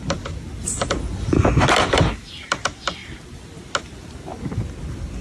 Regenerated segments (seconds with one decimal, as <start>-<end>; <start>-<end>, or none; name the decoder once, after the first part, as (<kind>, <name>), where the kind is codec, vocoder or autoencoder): none